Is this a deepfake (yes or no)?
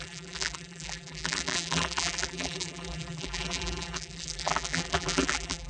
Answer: yes